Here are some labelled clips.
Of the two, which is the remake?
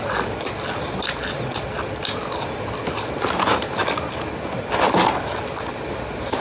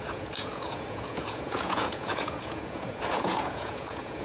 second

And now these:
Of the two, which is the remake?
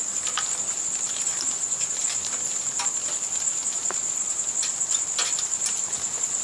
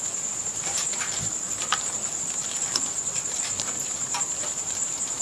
second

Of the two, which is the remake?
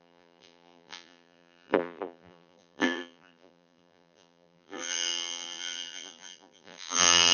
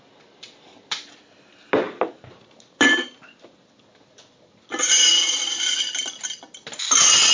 first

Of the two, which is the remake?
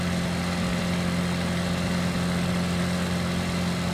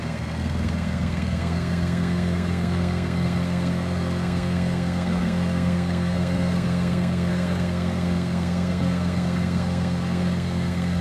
second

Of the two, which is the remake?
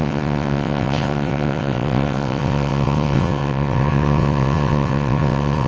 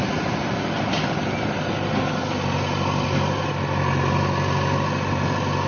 first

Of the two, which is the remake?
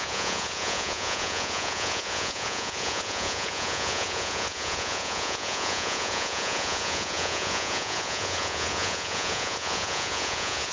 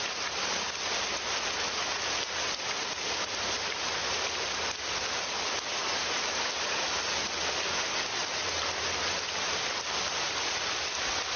first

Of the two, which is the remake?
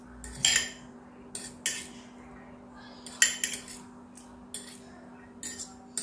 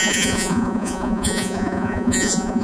second